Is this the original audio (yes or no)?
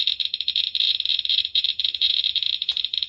no